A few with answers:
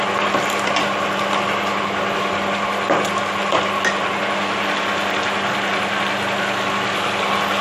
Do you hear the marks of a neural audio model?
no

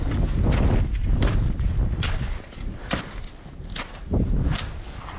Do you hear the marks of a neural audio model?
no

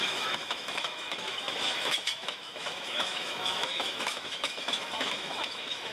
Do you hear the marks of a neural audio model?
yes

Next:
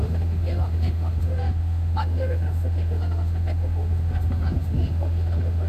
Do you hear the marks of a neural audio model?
yes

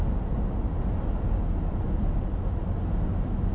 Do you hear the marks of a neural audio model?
no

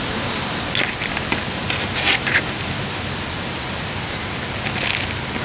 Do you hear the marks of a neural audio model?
no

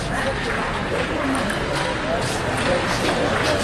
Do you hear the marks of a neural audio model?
no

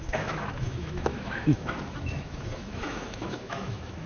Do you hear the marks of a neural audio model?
yes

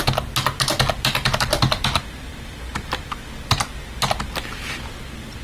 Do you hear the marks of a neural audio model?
no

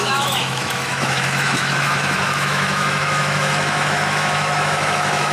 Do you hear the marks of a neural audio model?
yes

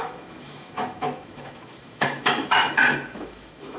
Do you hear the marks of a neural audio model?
yes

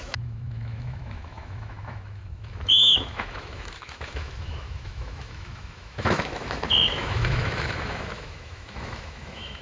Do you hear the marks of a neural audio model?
yes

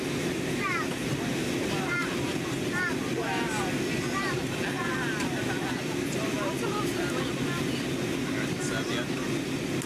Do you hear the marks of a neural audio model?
no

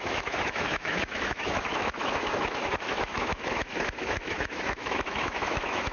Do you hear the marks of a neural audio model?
yes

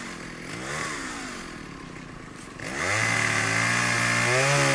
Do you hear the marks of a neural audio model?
no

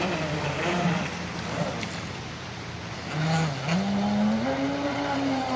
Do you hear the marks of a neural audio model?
no